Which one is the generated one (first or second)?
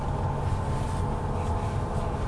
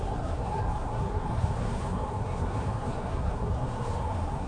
second